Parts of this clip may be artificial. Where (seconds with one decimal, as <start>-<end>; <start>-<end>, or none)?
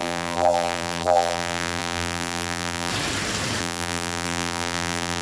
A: 0.0-2.9; 3.6-5.2